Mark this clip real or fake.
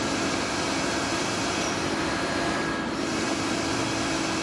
real